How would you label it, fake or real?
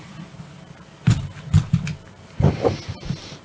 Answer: real